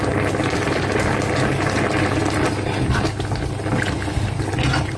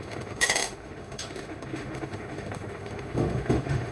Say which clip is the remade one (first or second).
second